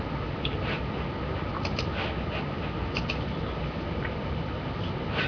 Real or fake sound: real